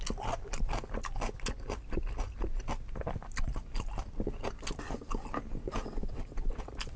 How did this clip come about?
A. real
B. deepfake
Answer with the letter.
A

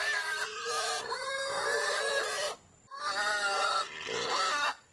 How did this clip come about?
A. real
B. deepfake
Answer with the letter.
A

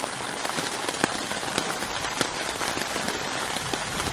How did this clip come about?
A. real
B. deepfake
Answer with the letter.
B